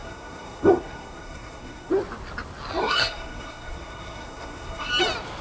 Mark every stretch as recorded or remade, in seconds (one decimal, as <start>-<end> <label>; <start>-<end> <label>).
0.0-1.9 remade; 1.9-2.8 recorded; 2.8-4.9 remade; 4.9-5.4 recorded